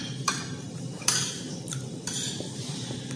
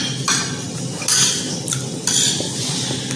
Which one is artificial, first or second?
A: first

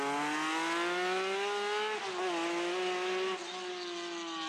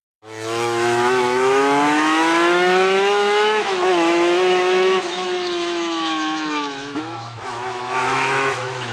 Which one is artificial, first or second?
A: second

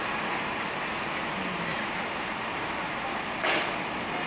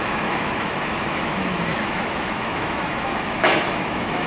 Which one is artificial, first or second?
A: second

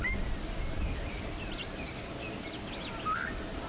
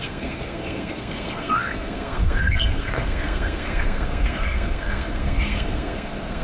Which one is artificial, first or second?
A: second